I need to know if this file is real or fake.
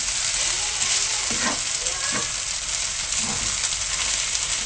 real